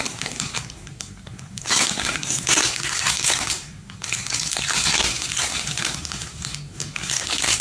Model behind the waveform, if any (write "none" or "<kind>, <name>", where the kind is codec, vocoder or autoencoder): codec, SNAC